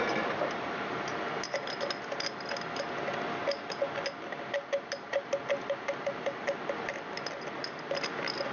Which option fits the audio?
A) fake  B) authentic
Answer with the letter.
B